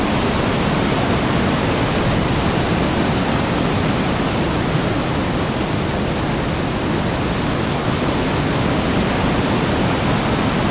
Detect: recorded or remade recorded